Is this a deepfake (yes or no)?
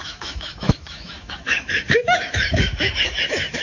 yes